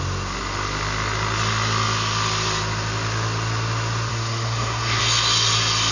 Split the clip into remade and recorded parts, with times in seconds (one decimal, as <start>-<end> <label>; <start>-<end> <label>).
0.0-4.1 recorded; 4.1-5.0 remade; 5.0-5.9 recorded